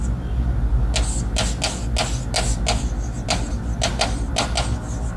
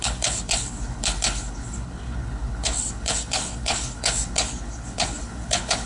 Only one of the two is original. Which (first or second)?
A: first